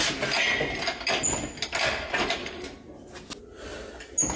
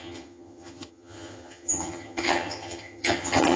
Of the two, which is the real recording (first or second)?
first